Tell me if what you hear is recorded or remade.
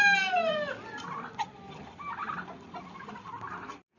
recorded